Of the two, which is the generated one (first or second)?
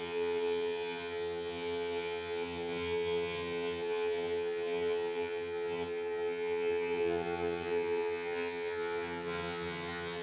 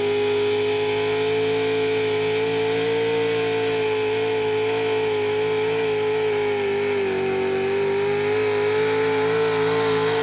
first